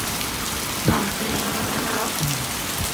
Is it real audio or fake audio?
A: real